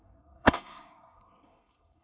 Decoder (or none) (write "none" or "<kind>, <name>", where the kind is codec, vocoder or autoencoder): codec, SNAC